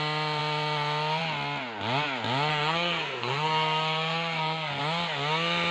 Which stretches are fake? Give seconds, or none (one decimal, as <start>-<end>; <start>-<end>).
2.5-4.8